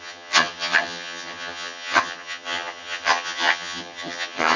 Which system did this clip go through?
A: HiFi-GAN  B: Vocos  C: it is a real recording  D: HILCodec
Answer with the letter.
A